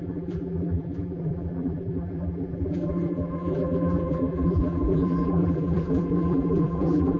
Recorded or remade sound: remade